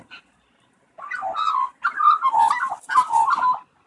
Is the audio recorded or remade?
recorded